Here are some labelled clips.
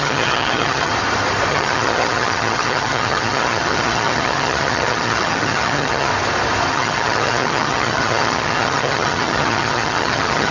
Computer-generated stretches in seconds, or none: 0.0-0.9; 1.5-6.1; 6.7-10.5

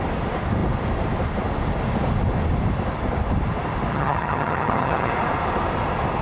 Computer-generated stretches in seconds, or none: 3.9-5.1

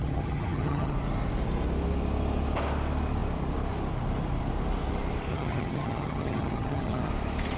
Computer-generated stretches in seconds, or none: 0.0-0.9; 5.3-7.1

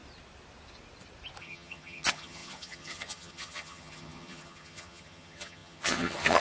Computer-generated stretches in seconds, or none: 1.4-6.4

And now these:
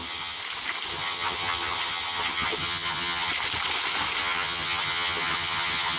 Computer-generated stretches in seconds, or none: 0.0-0.4; 0.9-3.3; 4.2-6.0

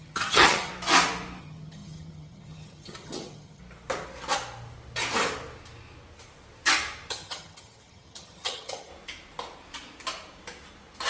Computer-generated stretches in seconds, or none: 0.0-0.7; 1.4-3.6; 7.1-8.9

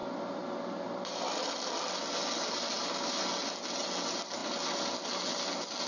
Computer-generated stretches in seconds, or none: none